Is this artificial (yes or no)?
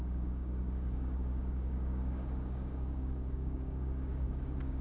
yes